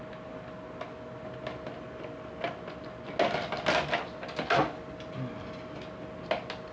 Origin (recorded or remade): recorded